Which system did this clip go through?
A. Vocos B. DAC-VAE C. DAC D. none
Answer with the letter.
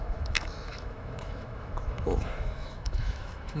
B